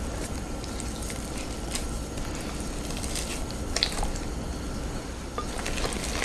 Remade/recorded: recorded